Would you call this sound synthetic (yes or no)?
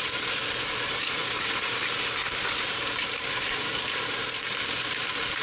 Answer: yes